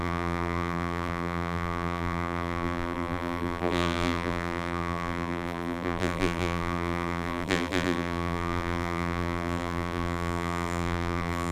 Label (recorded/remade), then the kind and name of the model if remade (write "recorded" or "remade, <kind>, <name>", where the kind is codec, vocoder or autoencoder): remade, vocoder, BigVGAN v2